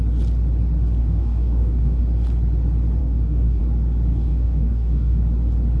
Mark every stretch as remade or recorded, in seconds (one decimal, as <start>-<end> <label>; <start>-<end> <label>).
0.0-1.0 recorded; 1.0-2.0 remade; 2.0-3.0 recorded; 3.0-3.6 remade; 3.6-4.1 recorded; 4.1-5.2 remade; 5.2-5.8 recorded